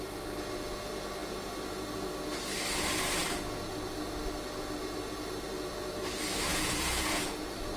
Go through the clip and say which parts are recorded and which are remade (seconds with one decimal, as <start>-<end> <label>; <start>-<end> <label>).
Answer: 0.0-6.5 recorded; 6.5-7.2 remade; 7.2-7.8 recorded